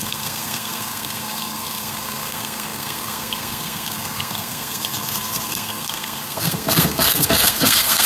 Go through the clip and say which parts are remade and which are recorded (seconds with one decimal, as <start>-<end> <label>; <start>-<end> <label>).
0.0-8.1 remade